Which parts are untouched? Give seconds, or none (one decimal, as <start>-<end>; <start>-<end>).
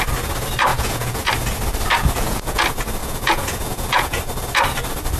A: 0.0-0.7; 1.3-2.0; 2.6-3.0; 4.2-5.2